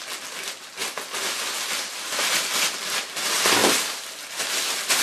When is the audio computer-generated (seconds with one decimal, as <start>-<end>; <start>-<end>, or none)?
0.8-2.5